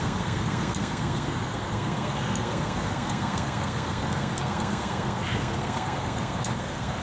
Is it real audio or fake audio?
fake